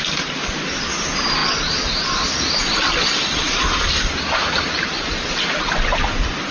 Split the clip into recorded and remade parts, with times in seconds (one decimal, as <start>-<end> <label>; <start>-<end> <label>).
0.0-6.5 recorded